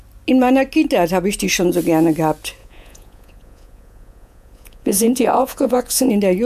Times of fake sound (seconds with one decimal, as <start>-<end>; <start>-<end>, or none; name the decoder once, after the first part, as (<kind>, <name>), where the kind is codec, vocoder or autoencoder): 2.6-6.1 (vocoder, Vocos)